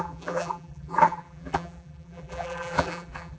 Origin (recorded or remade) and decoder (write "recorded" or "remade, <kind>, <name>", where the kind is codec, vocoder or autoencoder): remade, vocoder, BigVGAN v2